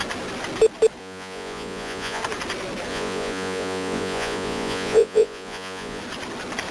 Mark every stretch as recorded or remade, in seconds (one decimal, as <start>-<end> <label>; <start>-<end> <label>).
0.0-1.0 recorded; 1.0-2.2 remade; 2.2-2.9 recorded; 2.9-6.0 remade; 6.0-6.7 recorded